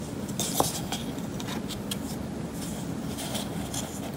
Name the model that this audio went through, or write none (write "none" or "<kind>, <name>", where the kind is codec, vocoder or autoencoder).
none